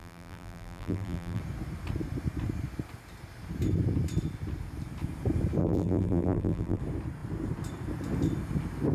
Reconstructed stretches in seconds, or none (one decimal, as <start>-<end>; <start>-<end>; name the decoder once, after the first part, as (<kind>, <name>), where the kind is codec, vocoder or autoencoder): 0.0-1.4 (vocoder, BigVGAN v2); 5.6-6.8